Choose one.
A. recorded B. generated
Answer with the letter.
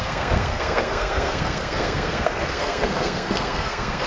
B